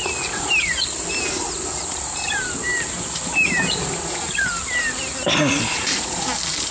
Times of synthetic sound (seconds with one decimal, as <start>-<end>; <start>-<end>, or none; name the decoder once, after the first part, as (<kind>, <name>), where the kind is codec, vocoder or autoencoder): none